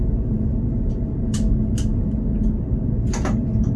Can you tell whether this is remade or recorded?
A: recorded